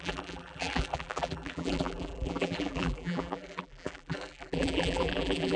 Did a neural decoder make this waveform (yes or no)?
yes